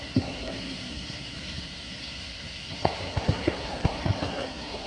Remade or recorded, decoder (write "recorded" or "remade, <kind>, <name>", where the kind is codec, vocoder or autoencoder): remade, codec, SNAC